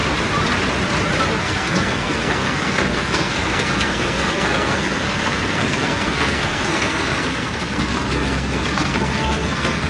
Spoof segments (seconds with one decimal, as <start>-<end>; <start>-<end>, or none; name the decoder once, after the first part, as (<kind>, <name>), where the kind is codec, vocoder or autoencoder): 1.4-9.9 (codec, SNAC)